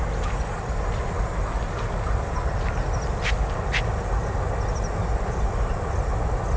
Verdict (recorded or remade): recorded